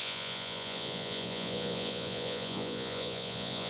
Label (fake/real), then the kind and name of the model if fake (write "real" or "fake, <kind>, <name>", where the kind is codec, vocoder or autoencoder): fake, vocoder, Vocos